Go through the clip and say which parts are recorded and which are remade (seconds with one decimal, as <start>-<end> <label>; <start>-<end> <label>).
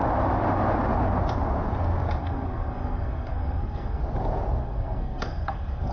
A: 0.0-2.2 recorded; 2.2-4.0 remade; 4.0-4.6 recorded; 4.6-5.9 remade